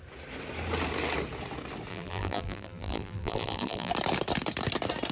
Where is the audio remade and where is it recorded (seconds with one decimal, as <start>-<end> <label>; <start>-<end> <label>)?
0.0-1.9 recorded; 1.9-3.9 remade; 3.9-5.1 recorded

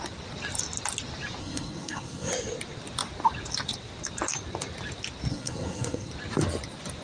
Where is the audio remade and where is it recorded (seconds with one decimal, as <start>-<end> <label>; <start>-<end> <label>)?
0.0-1.4 recorded; 1.4-2.3 remade; 2.3-5.3 recorded; 5.3-6.1 remade; 6.1-7.0 recorded

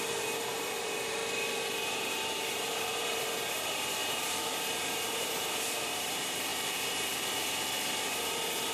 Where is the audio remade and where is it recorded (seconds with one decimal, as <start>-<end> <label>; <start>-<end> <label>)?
0.0-1.2 remade; 1.2-1.9 recorded; 1.9-6.5 remade; 6.5-8.7 recorded

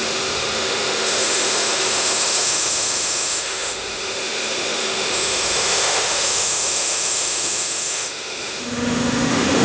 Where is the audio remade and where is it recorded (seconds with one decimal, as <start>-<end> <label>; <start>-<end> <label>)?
0.0-9.6 remade

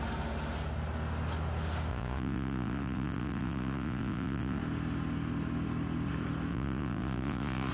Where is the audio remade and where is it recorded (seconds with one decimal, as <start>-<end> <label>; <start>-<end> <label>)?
0.0-1.9 recorded; 1.9-4.6 remade; 4.6-6.5 recorded; 6.5-7.7 remade